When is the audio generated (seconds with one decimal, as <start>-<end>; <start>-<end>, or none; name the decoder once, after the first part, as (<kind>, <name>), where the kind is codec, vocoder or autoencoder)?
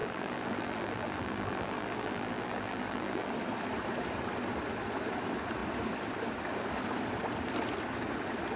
0.0-3.3 (vocoder, BigVGAN v2)